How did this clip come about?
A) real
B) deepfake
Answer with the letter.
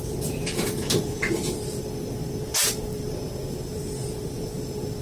B